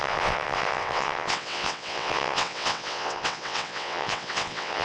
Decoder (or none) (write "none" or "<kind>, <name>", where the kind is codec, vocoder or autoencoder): vocoder, WaveNeXt